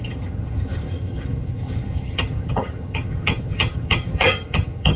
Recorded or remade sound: remade